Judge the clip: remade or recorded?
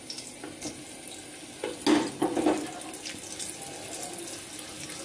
recorded